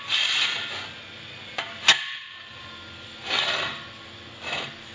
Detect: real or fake real